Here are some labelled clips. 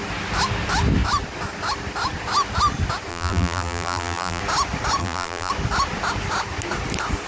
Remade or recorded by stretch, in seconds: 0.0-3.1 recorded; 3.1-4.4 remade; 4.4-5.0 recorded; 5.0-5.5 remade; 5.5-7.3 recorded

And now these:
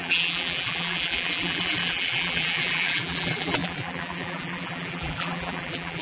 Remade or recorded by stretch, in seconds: 0.0-6.0 remade

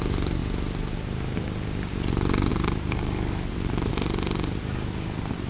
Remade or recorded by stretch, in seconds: 0.0-2.5 recorded; 2.5-3.9 remade; 3.9-5.5 recorded

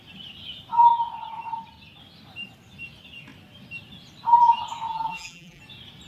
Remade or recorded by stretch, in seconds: 0.0-4.9 recorded; 4.9-5.6 remade; 5.6-6.1 recorded